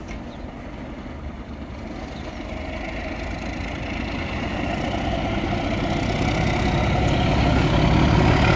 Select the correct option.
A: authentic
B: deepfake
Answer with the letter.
A